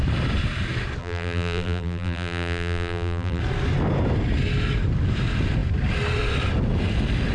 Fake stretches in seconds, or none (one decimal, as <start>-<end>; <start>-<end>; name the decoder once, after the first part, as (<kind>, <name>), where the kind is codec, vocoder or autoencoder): 1.0-3.4 (vocoder, BigVGAN v2)